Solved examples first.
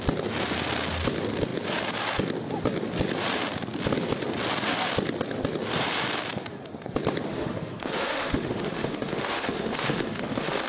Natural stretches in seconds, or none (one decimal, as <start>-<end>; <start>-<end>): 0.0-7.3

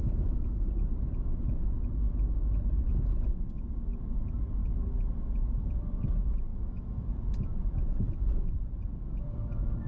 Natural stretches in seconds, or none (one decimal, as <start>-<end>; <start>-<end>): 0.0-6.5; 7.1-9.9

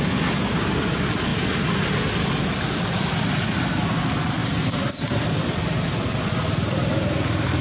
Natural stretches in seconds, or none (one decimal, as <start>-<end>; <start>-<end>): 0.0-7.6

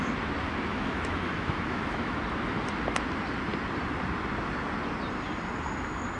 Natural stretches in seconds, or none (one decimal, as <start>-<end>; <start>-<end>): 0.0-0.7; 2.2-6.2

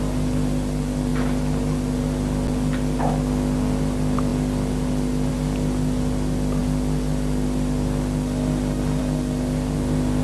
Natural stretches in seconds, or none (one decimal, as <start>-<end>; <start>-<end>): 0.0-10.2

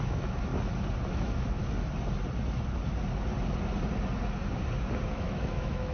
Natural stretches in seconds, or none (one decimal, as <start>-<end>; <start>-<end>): 0.5-1.1; 1.6-5.1

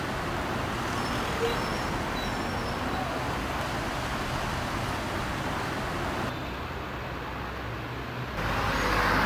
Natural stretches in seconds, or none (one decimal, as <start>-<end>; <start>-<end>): 0.0-9.3